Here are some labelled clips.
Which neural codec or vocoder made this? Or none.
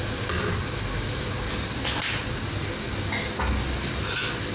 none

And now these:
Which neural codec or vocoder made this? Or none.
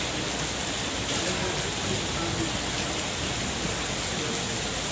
none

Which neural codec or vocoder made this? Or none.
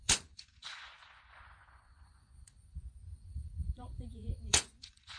vocoder, Vocos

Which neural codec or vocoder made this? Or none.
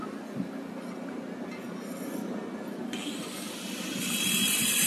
none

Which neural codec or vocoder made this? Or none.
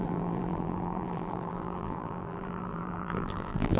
vocoder, BigVGAN v2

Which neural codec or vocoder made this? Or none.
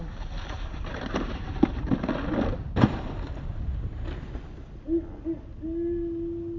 none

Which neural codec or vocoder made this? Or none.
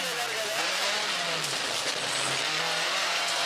none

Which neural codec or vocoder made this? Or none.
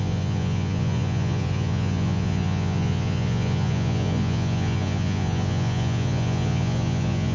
vocoder, Vocos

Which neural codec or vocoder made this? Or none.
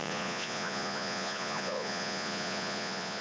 vocoder, Vocos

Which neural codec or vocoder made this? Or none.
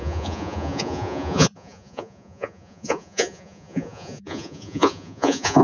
vocoder, Vocos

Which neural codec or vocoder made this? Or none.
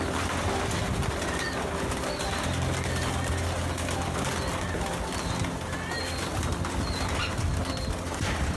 none